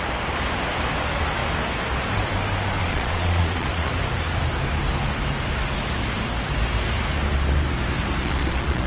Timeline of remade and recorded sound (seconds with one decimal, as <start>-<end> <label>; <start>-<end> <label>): 0.0-2.8 recorded; 2.8-3.9 remade; 3.9-8.2 recorded; 8.2-8.9 remade